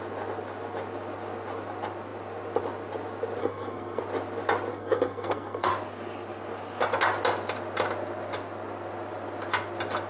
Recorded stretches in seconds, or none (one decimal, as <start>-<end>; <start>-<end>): 0.0-3.4; 4.0-4.7; 5.7-10.1